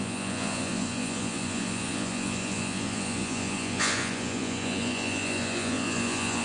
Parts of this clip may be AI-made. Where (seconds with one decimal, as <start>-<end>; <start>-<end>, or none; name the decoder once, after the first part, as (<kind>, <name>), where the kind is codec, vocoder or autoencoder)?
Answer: 0.0-6.4 (vocoder, Vocos)